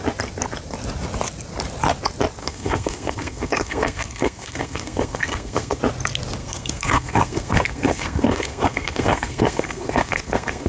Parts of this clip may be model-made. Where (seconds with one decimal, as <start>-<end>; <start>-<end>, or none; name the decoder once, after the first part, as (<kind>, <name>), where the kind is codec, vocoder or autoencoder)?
2.4-5.8 (codec, SNAC); 6.4-10.7